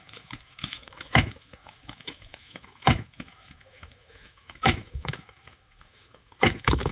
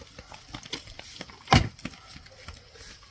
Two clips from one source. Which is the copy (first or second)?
first